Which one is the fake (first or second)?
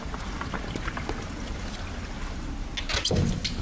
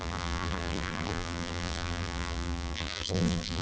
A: second